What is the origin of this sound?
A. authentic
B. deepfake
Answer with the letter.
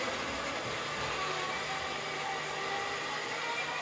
A